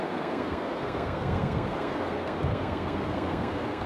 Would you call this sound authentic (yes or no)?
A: no